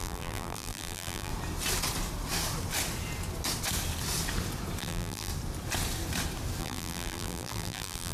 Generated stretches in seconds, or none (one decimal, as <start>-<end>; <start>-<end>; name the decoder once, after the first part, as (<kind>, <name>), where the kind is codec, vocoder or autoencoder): 0.0-1.3 (vocoder, BigVGAN v2); 4.8-5.3; 6.6-8.1